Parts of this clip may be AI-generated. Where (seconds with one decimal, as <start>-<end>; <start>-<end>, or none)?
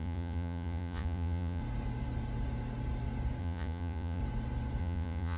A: 0.0-1.6; 3.4-4.2; 4.8-5.4